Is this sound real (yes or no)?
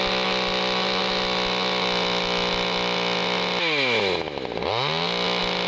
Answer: yes